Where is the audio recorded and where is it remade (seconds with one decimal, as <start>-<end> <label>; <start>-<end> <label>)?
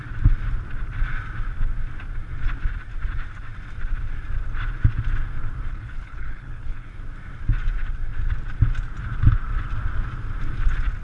0.0-5.7 recorded; 5.7-6.9 remade; 6.9-11.0 recorded